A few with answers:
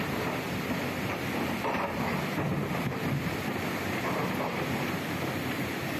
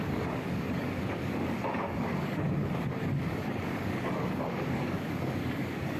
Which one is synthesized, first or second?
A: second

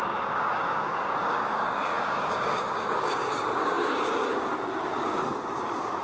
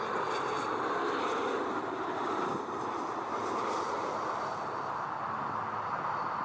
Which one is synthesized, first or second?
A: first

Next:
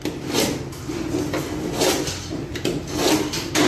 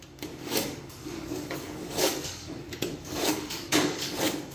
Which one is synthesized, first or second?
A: second